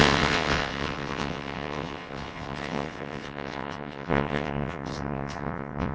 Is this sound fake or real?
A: fake